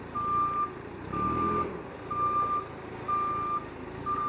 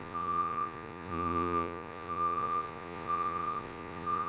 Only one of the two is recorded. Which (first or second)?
first